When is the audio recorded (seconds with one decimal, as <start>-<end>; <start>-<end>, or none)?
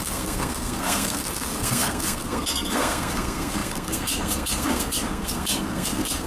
none